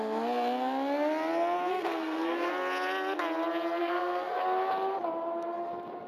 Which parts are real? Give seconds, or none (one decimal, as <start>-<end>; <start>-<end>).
0.0-1.7; 2.5-3.8; 4.4-6.1